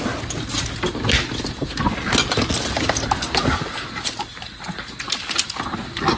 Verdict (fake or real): real